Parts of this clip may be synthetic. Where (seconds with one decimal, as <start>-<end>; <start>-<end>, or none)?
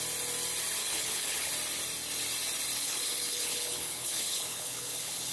0.8-1.5; 2.8-5.3